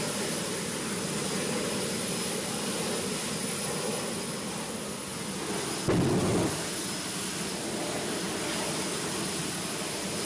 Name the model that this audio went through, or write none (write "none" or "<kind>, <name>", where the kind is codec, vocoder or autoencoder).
none